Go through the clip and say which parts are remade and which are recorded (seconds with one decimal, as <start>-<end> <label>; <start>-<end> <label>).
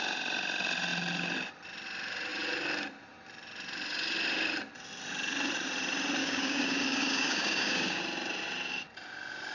0.0-6.2 recorded; 6.2-8.0 remade; 8.0-9.5 recorded